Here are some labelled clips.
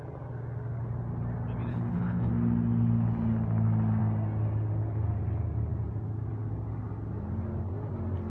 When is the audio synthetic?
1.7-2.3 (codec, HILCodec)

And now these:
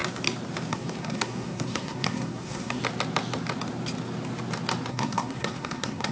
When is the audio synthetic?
0.7-2.8 (codec, SNAC); 4.9-6.1

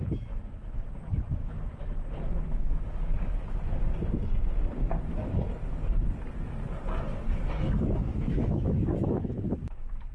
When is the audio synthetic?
8.1-9.5 (autoencoder, DAC-VAE)

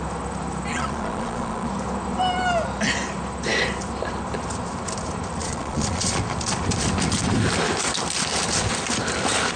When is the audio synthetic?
0.7-1.7 (vocoder, Vocos); 5.4-6.2

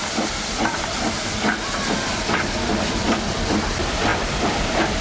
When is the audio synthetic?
0.0-5.0 (vocoder, BigVGAN v2)